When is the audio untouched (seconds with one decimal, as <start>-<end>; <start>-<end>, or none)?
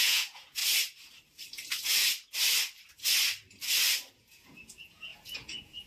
0.6-4.1